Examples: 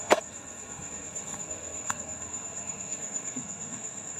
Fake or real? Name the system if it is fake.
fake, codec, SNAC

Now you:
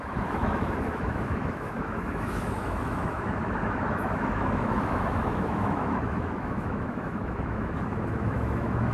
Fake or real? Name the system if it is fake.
fake, autoencoder, DAC-VAE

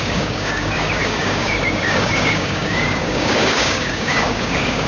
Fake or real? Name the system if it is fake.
fake, codec, DAC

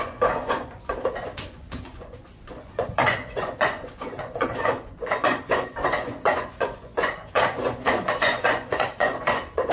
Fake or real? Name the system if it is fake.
fake, vocoder, Vocos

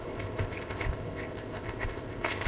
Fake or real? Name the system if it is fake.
fake, codec, ZipCodec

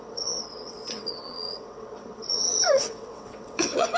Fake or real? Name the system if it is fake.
fake, vocoder, WaveNeXt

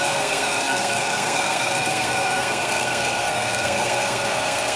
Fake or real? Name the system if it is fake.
fake, codec, SNAC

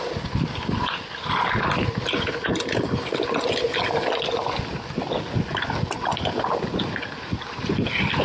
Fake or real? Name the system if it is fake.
real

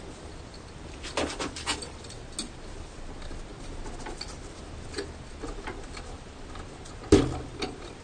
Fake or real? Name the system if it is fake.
real